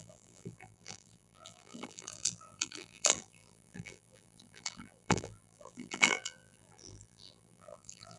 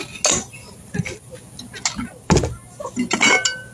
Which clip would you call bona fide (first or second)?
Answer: second